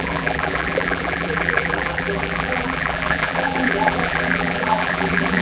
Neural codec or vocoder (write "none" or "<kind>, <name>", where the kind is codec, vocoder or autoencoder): vocoder, BigVGAN v2